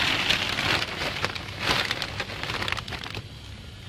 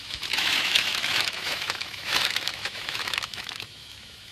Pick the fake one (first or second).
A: second